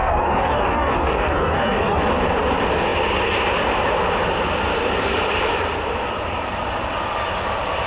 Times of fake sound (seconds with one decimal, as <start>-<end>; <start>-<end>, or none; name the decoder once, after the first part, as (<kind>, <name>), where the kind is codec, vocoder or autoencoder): 0.0-2.0 (codec, DAC)